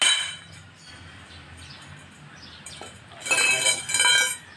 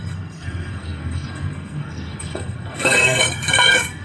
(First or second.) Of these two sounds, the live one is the first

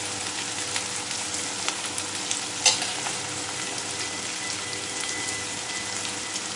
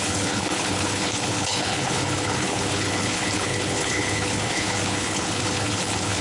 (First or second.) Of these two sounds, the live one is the first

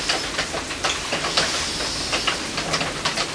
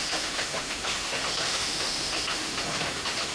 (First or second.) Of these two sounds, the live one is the first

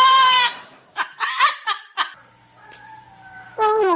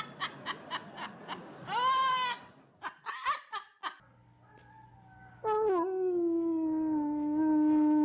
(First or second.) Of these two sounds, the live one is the second